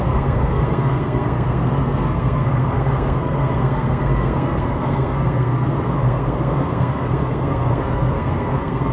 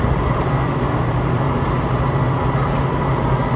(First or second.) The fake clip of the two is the first